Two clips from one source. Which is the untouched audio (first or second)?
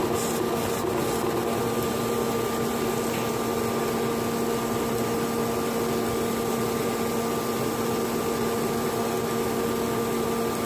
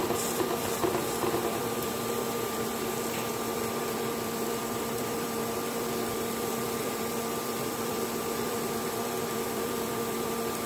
first